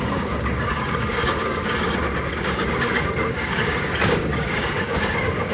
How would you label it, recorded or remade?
remade